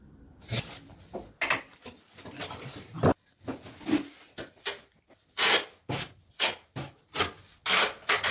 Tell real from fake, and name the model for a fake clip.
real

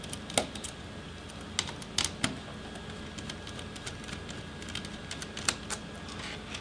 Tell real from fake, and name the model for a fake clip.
real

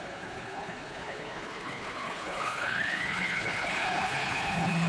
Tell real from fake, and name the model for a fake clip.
fake, codec, HILCodec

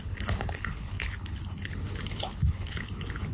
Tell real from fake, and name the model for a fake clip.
fake, codec, HILCodec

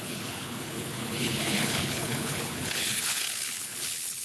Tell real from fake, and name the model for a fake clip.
fake, codec, HILCodec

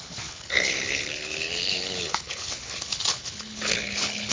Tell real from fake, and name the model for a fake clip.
fake, codec, HILCodec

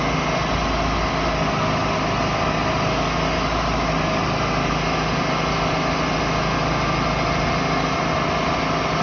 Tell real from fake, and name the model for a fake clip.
real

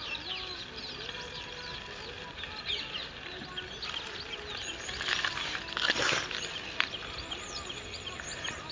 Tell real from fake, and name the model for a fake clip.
real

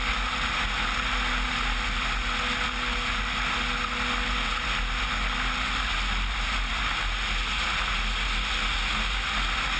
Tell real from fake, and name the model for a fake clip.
real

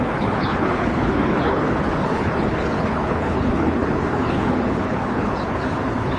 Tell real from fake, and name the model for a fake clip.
fake, codec, HILCodec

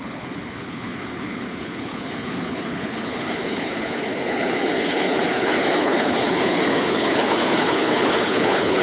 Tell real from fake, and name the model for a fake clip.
fake, codec, HILCodec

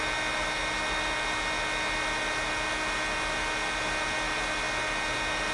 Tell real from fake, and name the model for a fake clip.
real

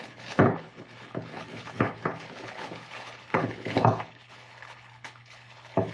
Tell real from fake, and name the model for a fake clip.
fake, codec, HILCodec